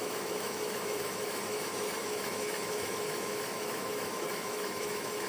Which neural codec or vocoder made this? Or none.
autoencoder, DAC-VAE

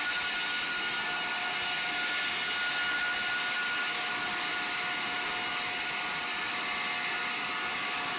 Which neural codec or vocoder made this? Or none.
none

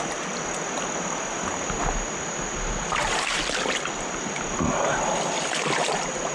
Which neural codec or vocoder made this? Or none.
none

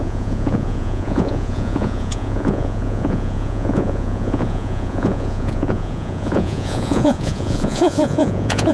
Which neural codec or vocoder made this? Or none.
vocoder, Vocos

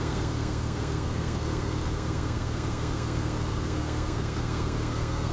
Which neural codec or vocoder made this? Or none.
codec, SNAC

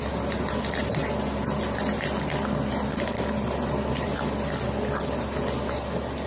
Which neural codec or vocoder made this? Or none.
none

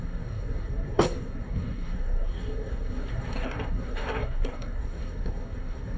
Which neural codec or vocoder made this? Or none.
codec, SNAC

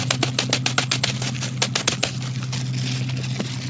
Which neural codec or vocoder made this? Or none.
none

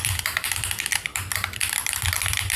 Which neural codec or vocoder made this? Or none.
vocoder, BigVGAN v2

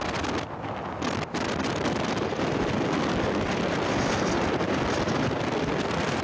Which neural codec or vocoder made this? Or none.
none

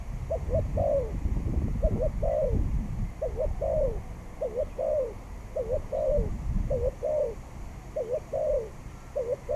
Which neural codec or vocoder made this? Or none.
none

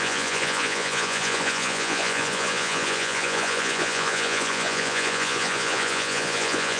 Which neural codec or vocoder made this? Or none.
vocoder, Vocos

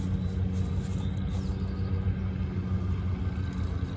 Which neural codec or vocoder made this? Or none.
none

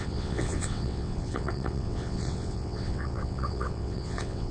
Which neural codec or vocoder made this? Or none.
vocoder, WaveNeXt